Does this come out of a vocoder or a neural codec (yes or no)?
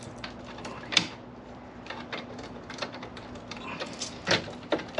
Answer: yes